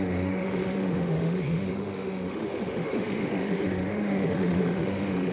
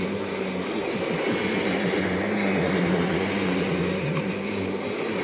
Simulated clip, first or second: first